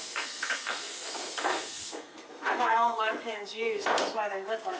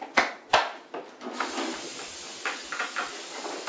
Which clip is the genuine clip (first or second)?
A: second